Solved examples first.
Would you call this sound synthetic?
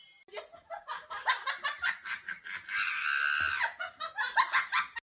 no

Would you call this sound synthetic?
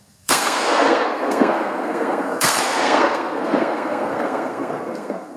yes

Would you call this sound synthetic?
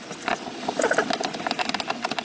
no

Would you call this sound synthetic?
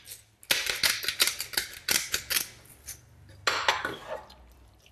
no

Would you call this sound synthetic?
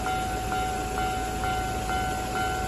no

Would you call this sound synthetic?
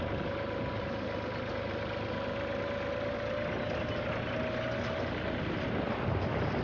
no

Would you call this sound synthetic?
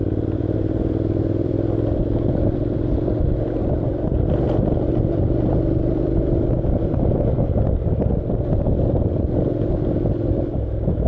yes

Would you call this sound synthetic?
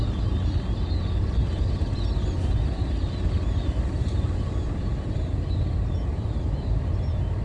no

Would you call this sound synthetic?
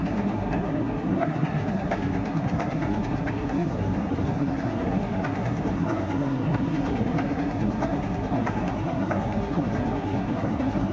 yes